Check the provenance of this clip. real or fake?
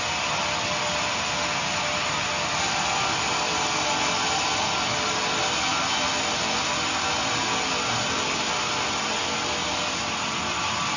real